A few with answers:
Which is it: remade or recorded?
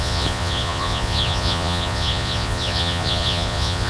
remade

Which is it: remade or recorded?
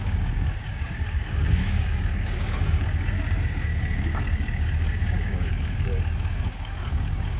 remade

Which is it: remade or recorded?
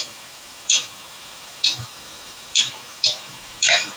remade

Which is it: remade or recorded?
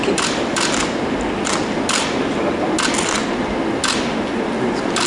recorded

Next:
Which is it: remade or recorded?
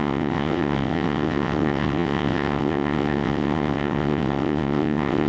remade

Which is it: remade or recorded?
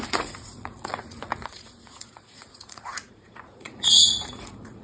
remade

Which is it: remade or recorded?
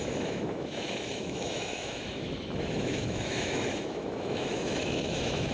remade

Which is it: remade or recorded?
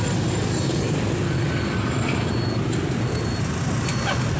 recorded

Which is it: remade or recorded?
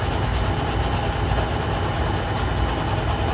recorded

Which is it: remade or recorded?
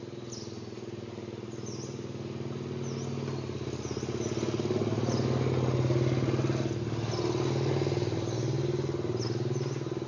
recorded